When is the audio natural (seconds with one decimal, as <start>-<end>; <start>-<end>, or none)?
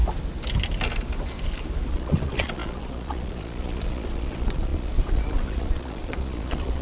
0.0-1.9